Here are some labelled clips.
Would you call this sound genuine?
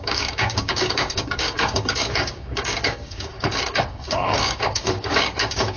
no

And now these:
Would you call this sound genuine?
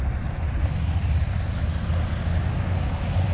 yes